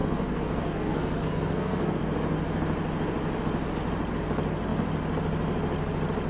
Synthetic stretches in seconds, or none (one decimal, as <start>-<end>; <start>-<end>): 0.0-2.0